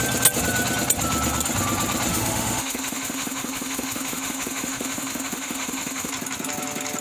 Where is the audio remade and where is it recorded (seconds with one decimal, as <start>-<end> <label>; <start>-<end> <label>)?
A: 0.0-2.1 recorded; 2.1-6.1 remade; 6.1-7.0 recorded